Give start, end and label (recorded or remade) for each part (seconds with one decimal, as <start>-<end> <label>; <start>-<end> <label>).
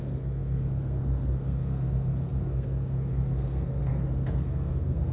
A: 0.0-5.1 remade